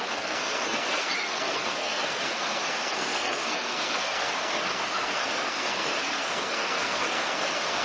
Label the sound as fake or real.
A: fake